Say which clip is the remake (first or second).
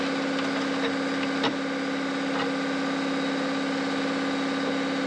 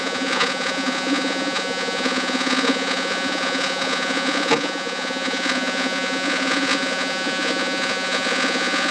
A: second